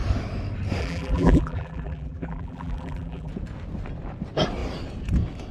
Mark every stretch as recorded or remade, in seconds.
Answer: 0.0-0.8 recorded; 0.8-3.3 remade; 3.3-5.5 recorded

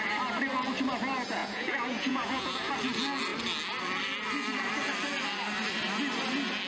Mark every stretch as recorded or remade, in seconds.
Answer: 0.0-1.4 recorded; 1.4-2.7 remade; 2.7-6.7 recorded

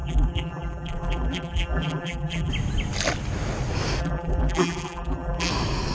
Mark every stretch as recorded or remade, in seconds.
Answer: 0.0-2.5 remade; 2.5-4.0 recorded; 4.0-5.5 remade; 5.5-5.9 recorded

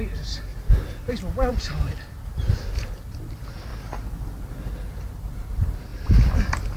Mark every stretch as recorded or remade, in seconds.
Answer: 0.0-0.5 remade; 0.5-1.5 recorded; 1.5-3.7 remade; 3.7-5.1 recorded; 5.1-5.9 remade; 5.9-6.8 recorded

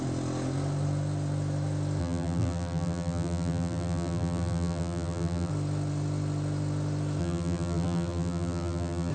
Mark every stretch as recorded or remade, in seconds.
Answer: 0.0-2.0 recorded; 2.0-5.5 remade; 5.5-7.2 recorded; 7.2-9.1 remade